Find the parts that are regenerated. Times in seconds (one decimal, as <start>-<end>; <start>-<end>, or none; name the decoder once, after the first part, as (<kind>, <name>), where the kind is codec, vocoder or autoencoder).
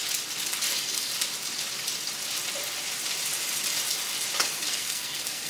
0.7-1.1 (codec, SNAC); 4.4-5.5